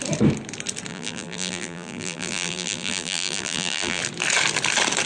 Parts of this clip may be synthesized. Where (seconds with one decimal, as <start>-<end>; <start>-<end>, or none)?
0.9-4.0